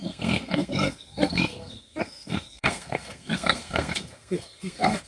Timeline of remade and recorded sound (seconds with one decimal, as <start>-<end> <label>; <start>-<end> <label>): 0.0-5.1 remade